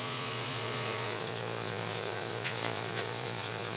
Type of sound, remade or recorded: remade